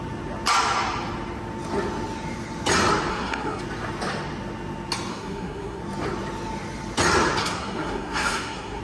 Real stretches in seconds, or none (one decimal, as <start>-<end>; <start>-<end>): 0.0-3.1; 3.6-5.1; 5.8-7.4